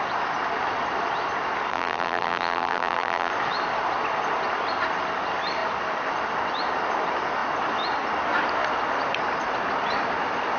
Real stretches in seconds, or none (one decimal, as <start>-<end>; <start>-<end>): 0.0-1.7; 3.3-10.6

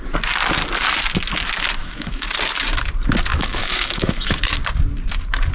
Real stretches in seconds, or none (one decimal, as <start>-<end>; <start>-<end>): 0.0-1.8; 2.3-3.3; 4.5-5.5